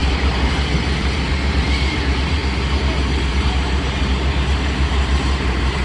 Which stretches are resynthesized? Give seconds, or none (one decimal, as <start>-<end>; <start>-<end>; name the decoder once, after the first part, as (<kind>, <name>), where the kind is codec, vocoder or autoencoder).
0.0-2.4 (vocoder, BigVGAN v2); 3.3-5.8